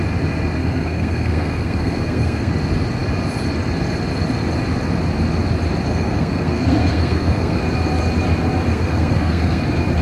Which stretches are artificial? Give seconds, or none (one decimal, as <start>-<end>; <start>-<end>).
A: 0.6-2.5; 5.9-7.6; 8.7-9.6